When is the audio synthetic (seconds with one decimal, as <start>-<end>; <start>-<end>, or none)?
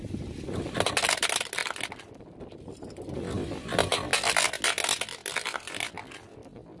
none